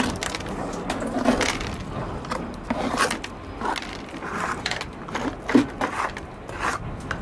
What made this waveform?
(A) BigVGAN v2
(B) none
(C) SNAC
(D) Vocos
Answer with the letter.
B